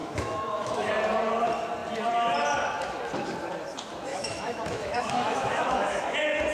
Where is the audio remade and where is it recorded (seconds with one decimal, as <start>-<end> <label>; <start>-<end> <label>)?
0.0-0.9 remade; 0.9-4.1 recorded; 4.1-6.1 remade; 6.1-6.5 recorded